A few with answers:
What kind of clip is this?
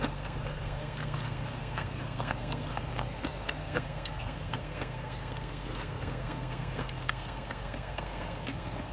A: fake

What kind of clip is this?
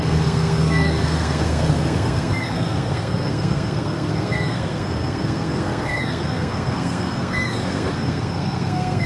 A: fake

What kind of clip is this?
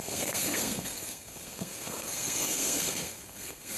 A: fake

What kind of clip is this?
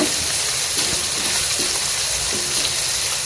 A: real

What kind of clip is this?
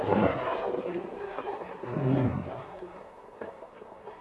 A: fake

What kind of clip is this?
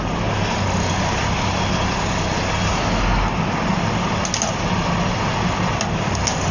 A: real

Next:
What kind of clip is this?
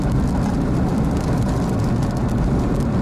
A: real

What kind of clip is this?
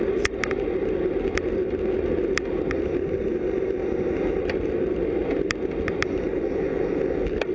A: real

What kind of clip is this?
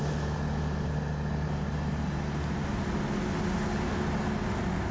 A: real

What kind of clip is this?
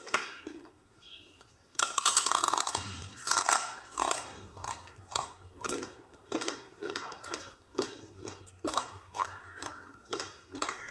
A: fake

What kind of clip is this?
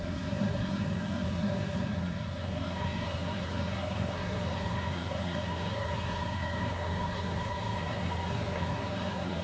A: fake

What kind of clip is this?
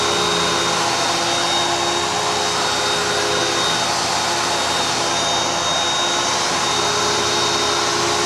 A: real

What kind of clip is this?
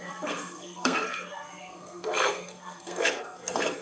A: fake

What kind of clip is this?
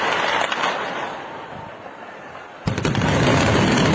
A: real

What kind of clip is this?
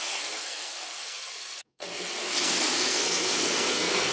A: fake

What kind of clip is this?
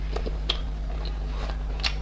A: real